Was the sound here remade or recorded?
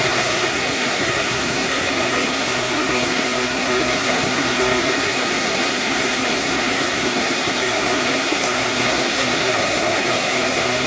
remade